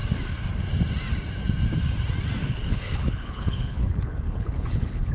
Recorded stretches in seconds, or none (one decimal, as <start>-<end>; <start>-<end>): 0.0-2.4